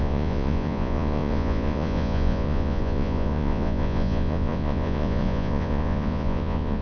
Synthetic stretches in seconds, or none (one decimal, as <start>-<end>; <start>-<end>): 0.0-6.8